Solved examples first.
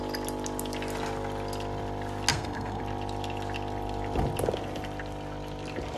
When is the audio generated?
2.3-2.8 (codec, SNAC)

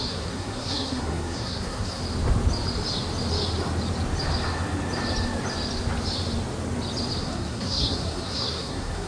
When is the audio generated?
0.0-2.0 (codec, SNAC); 7.2-9.1

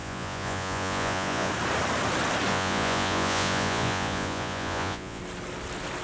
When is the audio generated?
0.0-1.5 (vocoder, Vocos); 2.5-5.2

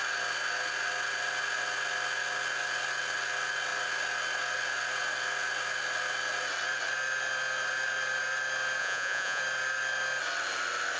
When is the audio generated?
8.8-9.4 (vocoder, Vocos)

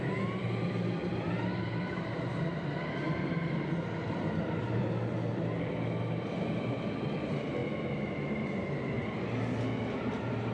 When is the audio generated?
none

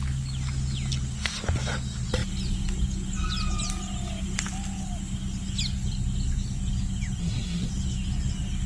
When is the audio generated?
7.2-7.7 (codec, SNAC)

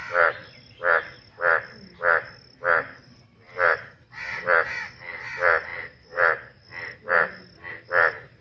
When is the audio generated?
none

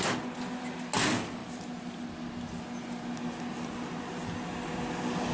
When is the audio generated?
none